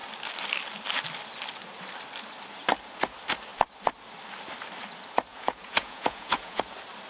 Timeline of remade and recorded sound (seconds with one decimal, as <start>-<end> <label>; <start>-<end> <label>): 0.0-5.3 recorded; 5.3-6.6 remade; 6.6-7.1 recorded